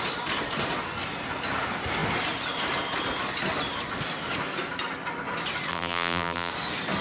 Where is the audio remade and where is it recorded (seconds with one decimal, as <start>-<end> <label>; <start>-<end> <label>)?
0.0-5.7 recorded; 5.7-6.5 remade; 6.5-7.0 recorded